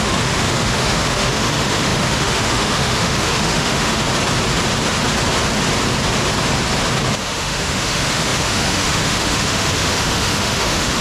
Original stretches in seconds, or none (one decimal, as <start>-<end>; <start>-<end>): 4.0-7.2